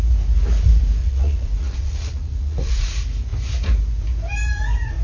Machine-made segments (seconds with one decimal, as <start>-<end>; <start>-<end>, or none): 1.0-2.9

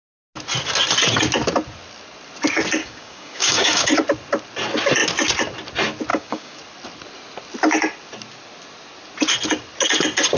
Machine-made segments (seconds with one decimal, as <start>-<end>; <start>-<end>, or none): 2.8-3.9; 6.1-6.6